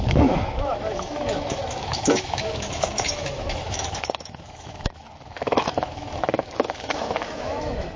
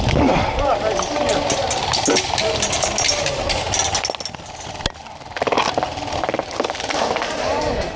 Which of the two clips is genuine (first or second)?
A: second